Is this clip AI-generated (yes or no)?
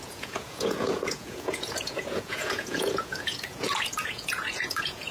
yes